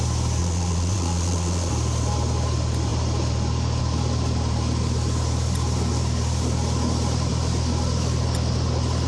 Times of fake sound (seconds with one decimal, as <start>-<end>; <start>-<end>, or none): 0.4-1.7